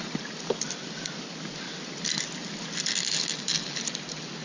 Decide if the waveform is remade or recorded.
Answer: recorded